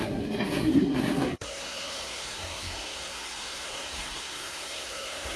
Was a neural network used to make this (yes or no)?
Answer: yes